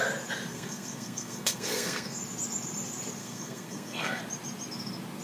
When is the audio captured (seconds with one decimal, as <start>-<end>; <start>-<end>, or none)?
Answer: 0.0-0.5; 2.2-3.2; 4.2-5.2